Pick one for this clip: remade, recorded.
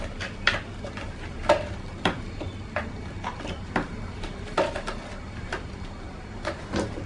remade